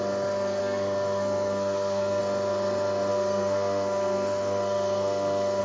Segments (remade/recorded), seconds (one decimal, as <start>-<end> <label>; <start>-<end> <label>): 0.0-0.6 recorded; 0.6-2.2 remade; 2.2-3.1 recorded; 3.1-5.6 remade